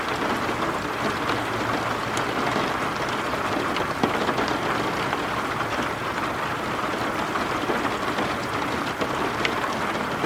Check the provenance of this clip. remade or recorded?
recorded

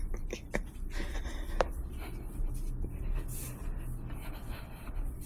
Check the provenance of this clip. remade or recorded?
recorded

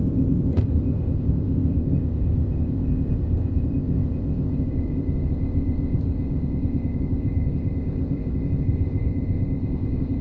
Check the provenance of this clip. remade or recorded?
remade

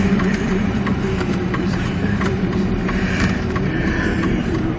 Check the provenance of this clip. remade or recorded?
remade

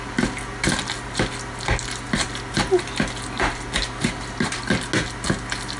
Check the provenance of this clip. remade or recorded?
recorded